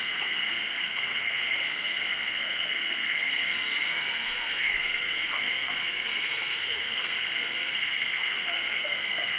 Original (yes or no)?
no